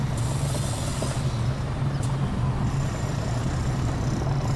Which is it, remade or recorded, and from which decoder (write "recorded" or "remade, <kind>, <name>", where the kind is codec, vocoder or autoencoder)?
recorded